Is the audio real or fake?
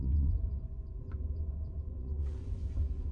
fake